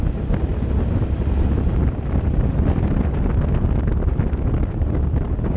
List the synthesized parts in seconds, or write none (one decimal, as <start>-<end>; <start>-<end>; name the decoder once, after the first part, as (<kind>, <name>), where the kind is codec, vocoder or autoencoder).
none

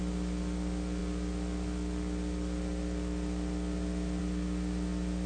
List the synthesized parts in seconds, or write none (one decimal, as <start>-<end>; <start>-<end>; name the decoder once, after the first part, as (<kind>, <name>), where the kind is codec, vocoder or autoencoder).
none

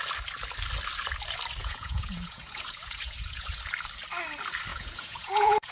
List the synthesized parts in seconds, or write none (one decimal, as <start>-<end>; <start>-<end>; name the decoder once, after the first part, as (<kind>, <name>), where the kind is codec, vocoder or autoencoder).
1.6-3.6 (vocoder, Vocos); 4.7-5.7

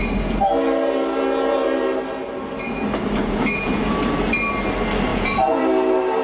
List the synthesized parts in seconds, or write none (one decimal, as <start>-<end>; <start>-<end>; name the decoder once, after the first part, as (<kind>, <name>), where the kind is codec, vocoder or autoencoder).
3.2-3.9 (vocoder, Vocos); 5.1-5.6

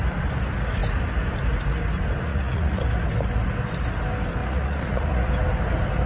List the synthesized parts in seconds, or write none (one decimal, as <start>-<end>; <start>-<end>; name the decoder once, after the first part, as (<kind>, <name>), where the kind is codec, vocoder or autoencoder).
2.3-2.8 (vocoder, Vocos); 4.4-5.3

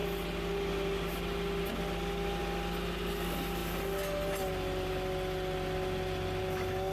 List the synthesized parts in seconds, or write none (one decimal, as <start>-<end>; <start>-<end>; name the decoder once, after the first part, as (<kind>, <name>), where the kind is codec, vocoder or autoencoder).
none

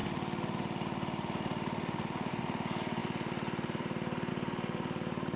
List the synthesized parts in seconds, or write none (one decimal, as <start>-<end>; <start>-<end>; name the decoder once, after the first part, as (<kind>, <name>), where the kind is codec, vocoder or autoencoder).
none

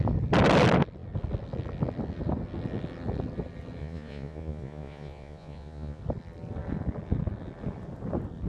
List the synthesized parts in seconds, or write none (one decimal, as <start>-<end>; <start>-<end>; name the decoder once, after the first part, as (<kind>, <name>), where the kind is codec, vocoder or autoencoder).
3.8-6.0 (vocoder, Vocos)